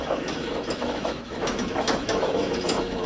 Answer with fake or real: fake